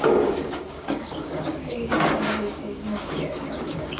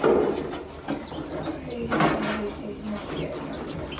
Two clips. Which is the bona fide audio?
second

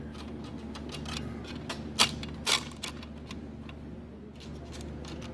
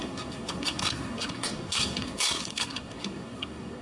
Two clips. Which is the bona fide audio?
first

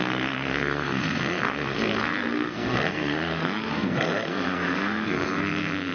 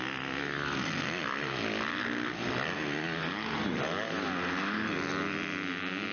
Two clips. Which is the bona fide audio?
second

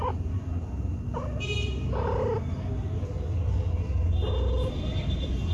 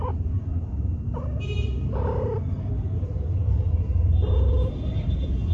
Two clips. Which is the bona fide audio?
first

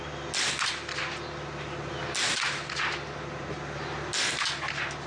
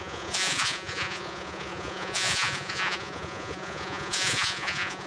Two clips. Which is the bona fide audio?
first